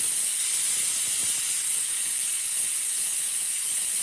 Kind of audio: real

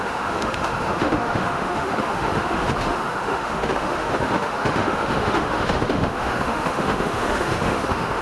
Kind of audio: fake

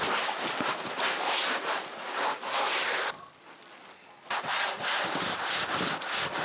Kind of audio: real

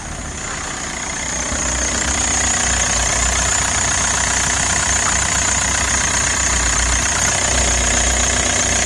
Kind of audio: real